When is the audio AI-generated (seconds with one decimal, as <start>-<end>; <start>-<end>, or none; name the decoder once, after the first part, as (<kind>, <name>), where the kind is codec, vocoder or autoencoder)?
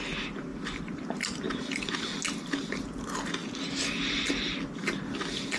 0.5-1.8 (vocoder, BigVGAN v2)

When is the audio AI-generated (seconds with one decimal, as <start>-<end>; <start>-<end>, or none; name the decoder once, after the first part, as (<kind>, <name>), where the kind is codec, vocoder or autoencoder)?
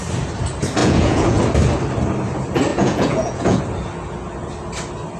0.8-1.4 (vocoder, Vocos); 2.7-3.6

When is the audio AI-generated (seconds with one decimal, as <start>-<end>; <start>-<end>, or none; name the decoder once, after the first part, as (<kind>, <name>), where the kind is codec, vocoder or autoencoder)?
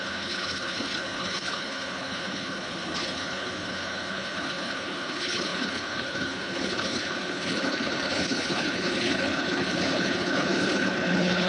0.0-11.5 (codec, HILCodec)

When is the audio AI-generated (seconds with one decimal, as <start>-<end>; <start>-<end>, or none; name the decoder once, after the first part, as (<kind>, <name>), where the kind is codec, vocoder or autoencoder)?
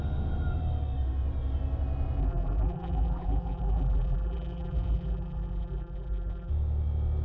2.2-6.5 (vocoder, BigVGAN v2)